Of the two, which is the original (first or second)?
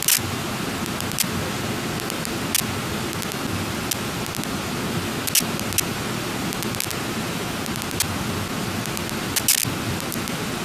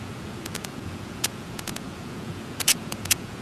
first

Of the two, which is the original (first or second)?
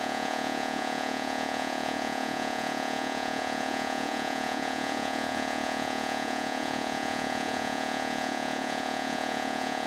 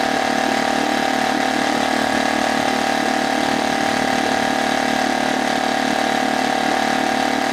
second